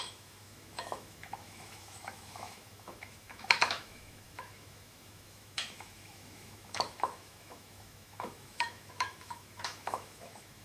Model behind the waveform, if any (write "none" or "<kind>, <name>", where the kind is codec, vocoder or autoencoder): autoencoder, DAC-VAE